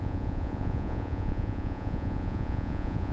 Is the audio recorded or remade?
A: remade